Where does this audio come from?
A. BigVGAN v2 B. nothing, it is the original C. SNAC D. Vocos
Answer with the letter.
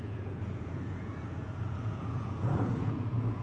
D